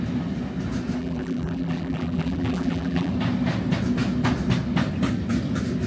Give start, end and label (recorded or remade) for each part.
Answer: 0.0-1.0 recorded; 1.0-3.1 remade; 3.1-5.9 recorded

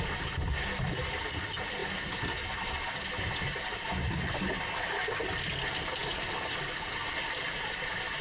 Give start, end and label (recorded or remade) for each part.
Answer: 0.0-6.0 recorded; 6.0-7.4 remade; 7.4-8.2 recorded

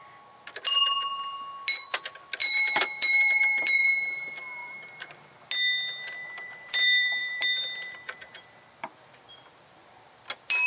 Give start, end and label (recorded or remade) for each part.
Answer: 0.0-2.4 recorded; 2.4-3.9 remade; 3.9-4.6 recorded; 4.6-5.1 remade; 5.1-6.2 recorded; 6.2-8.4 remade; 8.4-10.7 recorded

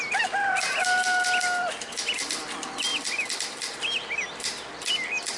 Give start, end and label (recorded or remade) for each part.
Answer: 0.0-5.4 remade